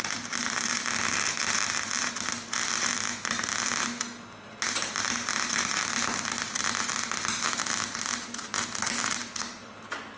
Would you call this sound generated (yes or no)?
no